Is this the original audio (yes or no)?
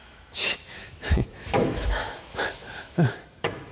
no